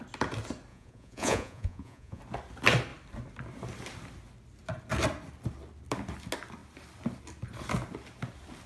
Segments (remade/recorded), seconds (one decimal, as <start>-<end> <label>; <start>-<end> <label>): 0.0-0.7 recorded; 0.7-2.2 remade; 2.2-8.7 recorded